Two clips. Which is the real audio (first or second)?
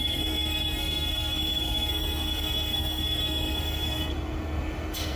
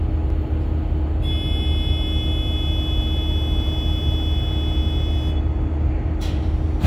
second